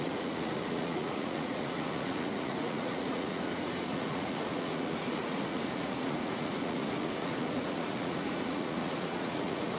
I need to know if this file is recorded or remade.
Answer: remade